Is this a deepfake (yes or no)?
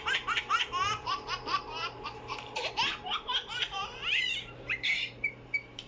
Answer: yes